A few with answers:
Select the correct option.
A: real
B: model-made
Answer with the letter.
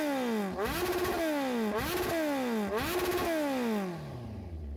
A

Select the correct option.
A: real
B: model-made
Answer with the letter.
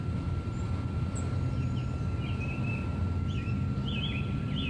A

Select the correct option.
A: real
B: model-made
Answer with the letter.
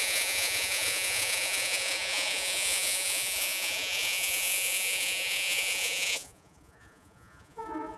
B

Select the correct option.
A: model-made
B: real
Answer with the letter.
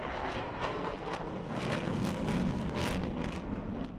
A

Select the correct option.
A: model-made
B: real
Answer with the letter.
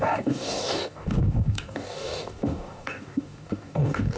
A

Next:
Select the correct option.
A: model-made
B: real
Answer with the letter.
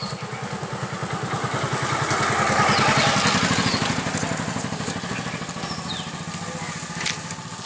B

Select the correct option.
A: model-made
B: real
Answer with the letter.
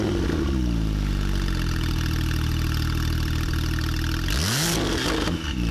B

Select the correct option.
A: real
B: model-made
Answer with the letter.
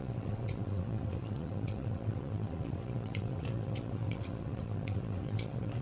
B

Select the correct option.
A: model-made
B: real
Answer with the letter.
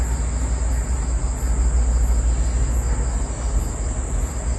B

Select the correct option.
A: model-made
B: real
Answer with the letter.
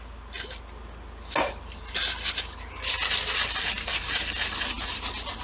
B